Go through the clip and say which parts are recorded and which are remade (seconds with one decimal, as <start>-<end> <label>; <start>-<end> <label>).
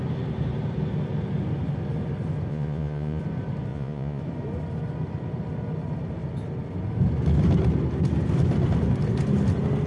0.0-2.5 recorded; 2.5-3.2 remade; 3.2-3.7 recorded; 3.7-4.2 remade; 4.2-9.9 recorded